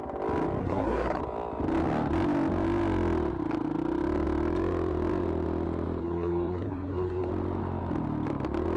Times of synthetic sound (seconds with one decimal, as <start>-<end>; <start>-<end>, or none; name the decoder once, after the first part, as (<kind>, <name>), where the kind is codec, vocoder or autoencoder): 0.6-1.2 (codec, SNAC); 6.0-7.3